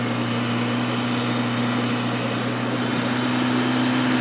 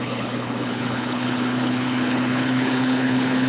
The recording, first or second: first